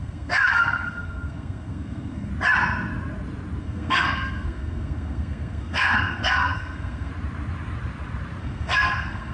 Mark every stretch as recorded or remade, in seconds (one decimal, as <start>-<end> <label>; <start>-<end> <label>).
0.0-2.3 remade; 2.3-3.6 recorded; 3.6-7.1 remade; 7.1-8.4 recorded; 8.4-9.3 remade